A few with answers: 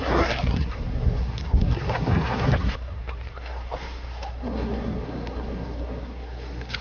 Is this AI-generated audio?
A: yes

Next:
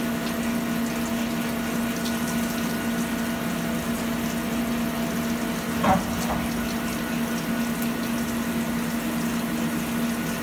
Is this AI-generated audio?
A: no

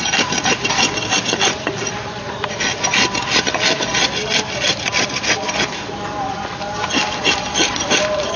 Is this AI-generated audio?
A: no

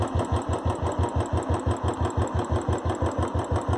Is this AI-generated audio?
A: no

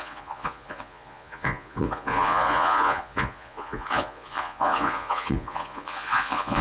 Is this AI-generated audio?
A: yes